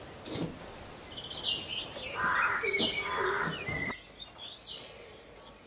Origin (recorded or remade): recorded